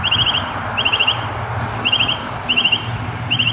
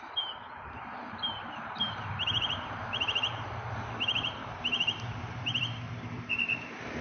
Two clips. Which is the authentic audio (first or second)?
first